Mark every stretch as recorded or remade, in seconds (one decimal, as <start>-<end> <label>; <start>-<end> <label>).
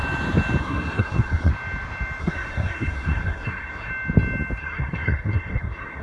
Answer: 0.0-0.6 recorded; 0.6-1.5 remade; 1.5-2.2 recorded; 2.2-3.9 remade; 3.9-4.6 recorded; 4.6-6.0 remade